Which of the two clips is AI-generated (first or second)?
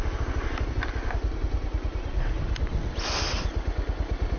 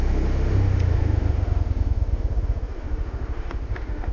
second